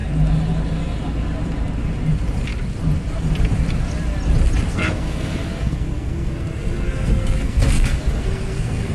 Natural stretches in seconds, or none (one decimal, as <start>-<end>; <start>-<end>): 0.0-4.7